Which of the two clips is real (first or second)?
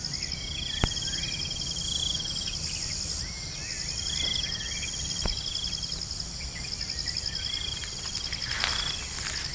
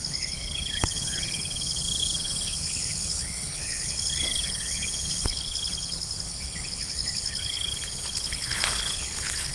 first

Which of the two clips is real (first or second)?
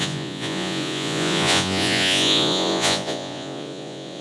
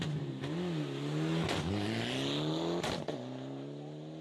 second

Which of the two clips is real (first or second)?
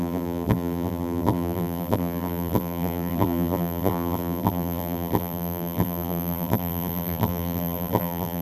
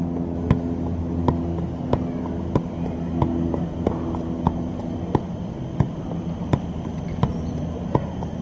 second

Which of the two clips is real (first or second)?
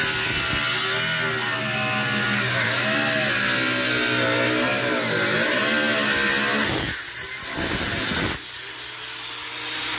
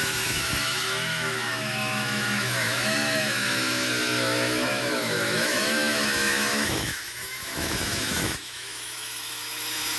first